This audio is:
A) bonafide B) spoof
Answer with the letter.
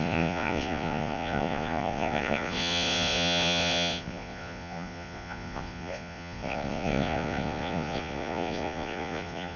B